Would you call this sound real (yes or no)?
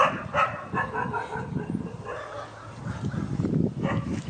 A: yes